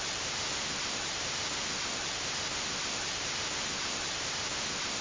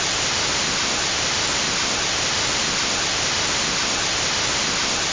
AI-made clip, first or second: second